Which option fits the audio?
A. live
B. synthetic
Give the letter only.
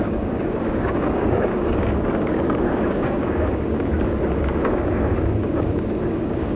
B